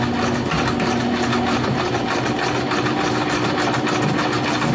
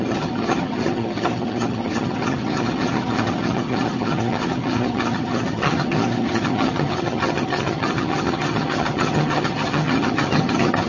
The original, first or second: first